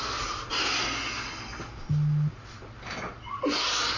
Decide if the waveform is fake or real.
real